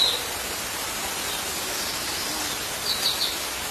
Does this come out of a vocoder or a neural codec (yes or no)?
no